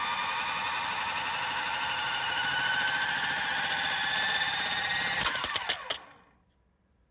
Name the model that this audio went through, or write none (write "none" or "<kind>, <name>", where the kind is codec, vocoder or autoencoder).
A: none